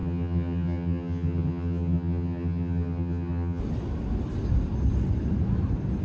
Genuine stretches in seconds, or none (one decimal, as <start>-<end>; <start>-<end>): 3.6-6.0